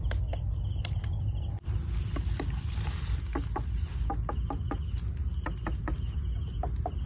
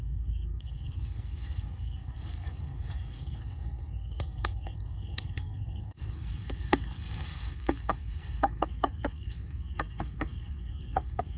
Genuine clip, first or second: first